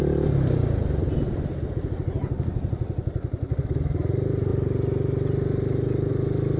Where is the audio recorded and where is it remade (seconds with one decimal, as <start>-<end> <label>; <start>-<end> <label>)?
0.0-6.6 recorded